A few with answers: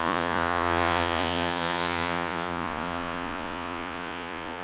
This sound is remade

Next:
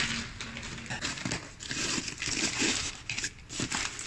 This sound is recorded